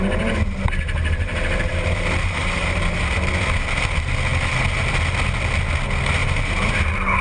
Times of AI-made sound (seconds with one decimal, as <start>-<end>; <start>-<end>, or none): 1.0-3.0; 6.2-6.8

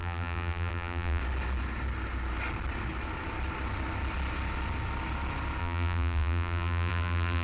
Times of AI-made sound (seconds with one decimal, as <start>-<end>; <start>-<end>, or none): 0.0-1.2; 5.6-7.4

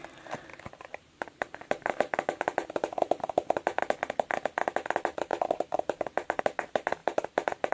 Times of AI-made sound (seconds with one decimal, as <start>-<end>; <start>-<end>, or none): 0.5-3.8; 5.3-6.4; 7.0-7.7